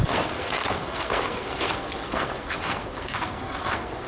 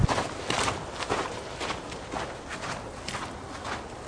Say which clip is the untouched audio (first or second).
second